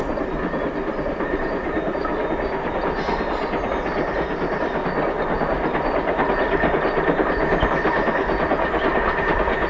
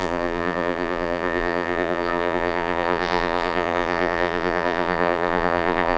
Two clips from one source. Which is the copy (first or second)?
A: second